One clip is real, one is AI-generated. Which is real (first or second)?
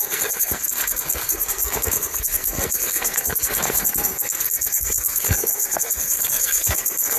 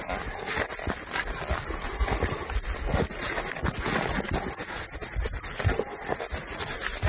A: second